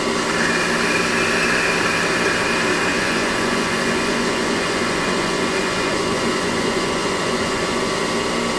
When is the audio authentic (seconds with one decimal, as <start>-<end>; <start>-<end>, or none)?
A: 0.0-2.9; 7.9-8.6